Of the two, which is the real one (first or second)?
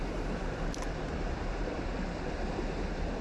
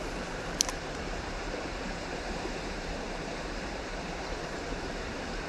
first